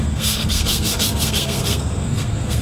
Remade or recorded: remade